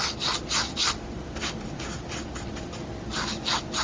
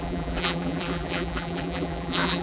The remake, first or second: second